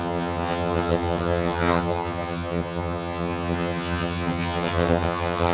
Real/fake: fake